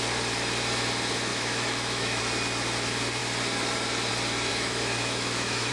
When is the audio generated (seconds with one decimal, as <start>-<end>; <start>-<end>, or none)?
1.3-2.2; 4.5-5.7

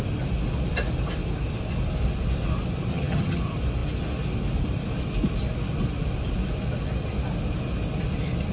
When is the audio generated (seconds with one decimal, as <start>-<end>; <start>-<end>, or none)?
2.9-3.4

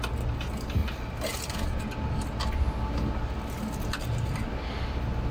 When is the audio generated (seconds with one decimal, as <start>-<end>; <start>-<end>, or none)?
none

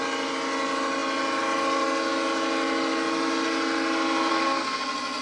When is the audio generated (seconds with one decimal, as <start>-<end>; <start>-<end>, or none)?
4.3-4.8

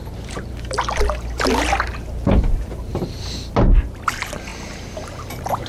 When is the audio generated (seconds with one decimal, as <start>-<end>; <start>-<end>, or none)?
none

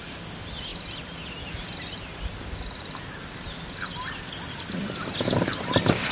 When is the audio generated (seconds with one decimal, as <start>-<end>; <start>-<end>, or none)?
none